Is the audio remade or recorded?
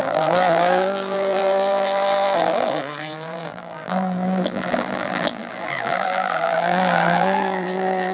remade